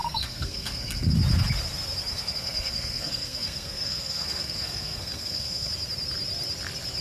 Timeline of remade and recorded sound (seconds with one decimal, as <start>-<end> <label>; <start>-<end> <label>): 0.0-1.1 remade; 1.1-2.1 recorded; 2.1-5.7 remade; 5.7-7.0 recorded